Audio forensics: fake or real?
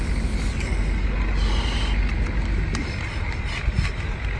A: real